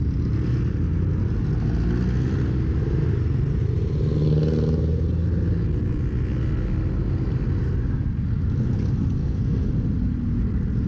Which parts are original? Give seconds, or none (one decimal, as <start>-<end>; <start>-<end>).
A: 0.0-9.2; 9.7-10.9